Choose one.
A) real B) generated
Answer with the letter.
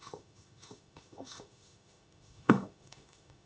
B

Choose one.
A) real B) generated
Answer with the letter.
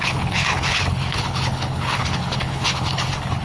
B